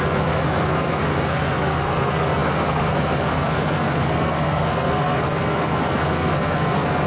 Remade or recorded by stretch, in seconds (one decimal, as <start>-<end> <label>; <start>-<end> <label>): 0.0-7.1 remade